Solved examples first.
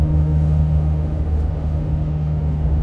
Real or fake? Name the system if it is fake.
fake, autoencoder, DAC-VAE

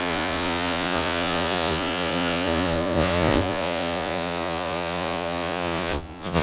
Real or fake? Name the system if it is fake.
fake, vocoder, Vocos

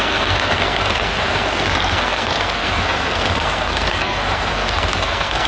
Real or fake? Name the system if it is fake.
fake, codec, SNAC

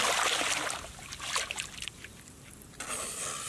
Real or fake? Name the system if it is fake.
real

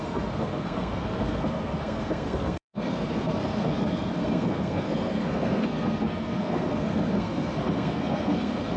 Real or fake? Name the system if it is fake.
fake, codec, SNAC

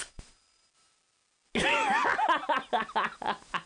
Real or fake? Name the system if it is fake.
real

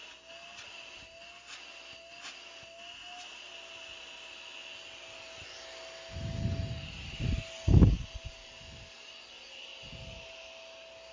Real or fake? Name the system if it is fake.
real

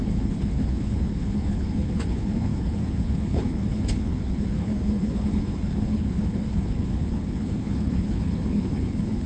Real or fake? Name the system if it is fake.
fake, codec, HILCodec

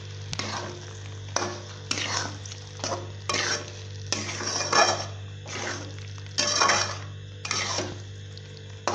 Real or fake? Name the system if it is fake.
real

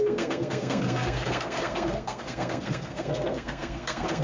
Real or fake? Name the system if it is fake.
fake, codec, SNAC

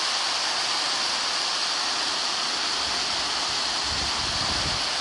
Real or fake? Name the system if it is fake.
real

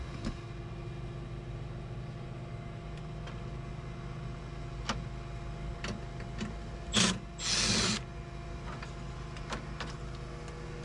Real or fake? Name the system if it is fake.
real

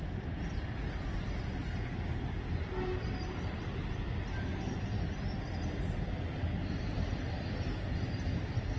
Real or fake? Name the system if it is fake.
real